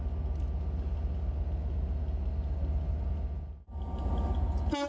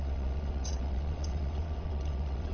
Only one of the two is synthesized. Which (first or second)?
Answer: second